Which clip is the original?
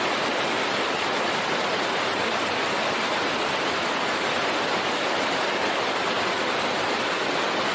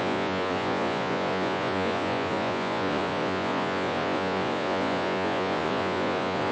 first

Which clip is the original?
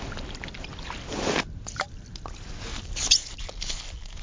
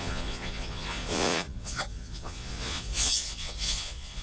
first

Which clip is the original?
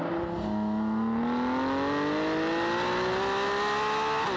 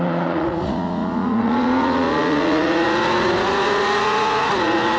first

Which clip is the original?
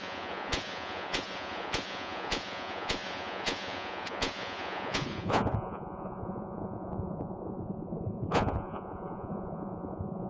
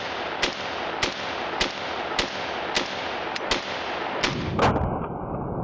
second